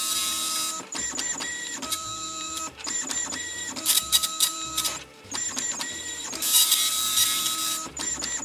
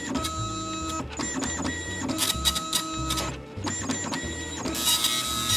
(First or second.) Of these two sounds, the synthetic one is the first